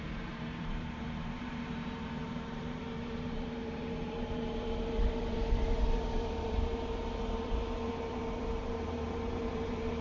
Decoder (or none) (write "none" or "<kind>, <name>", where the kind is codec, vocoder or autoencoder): vocoder, BigVGAN v2